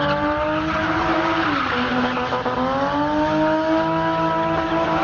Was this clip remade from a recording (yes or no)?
no